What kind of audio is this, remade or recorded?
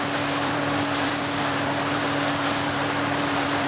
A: remade